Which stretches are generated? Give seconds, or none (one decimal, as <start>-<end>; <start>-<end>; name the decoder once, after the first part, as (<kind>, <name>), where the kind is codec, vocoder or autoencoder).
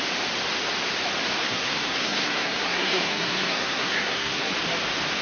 1.4-4.5 (codec, SNAC)